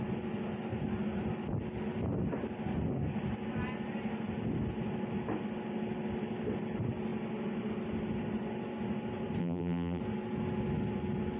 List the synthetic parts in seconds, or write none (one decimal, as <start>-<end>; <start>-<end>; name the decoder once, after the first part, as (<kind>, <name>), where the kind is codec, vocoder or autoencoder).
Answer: 9.4-10.0 (vocoder, BigVGAN v2)